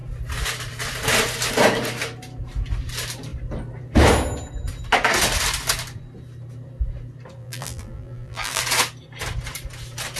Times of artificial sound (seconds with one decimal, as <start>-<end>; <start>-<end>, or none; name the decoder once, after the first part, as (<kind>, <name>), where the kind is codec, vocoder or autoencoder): 7.4-8.6 (vocoder, BigVGAN v2)